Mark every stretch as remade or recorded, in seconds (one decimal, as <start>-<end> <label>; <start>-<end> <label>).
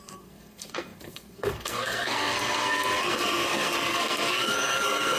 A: 0.0-5.2 remade